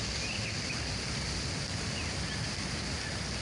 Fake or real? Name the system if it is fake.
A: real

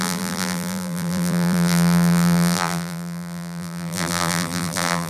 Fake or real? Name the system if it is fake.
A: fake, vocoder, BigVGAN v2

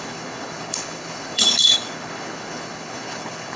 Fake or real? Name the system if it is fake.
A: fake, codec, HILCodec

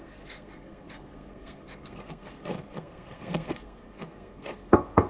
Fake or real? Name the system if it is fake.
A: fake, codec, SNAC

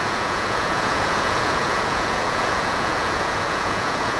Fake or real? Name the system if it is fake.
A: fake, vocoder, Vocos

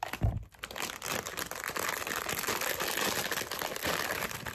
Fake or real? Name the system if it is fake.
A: real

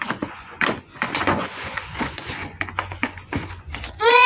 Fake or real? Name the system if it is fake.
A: fake, vocoder, Vocos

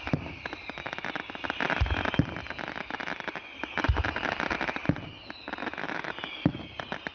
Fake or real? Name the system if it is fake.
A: real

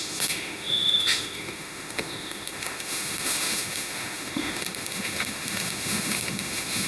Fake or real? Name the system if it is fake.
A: fake, autoencoder, DAC-VAE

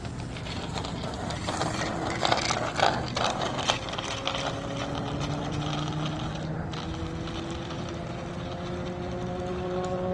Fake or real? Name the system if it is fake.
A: real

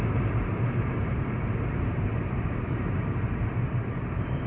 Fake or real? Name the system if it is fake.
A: fake, vocoder, BigVGAN v2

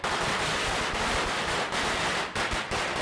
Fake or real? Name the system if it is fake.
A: real